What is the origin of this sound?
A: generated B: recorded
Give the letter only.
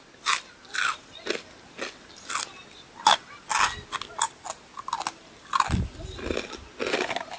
B